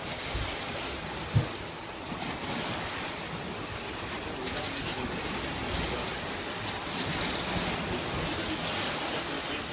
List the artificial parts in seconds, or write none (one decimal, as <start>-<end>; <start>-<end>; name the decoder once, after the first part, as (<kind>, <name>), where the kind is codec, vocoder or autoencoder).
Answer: none